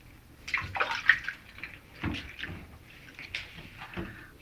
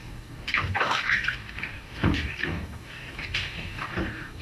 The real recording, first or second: first